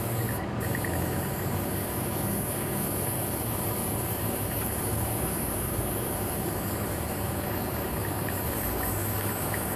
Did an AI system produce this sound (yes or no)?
yes